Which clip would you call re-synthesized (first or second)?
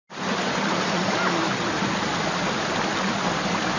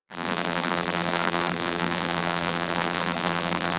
second